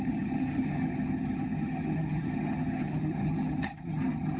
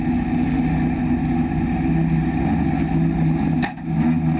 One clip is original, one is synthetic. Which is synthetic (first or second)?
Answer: first